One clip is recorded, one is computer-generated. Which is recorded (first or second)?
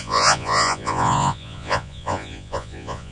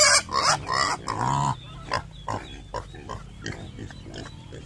second